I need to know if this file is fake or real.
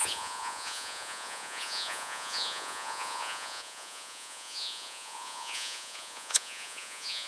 fake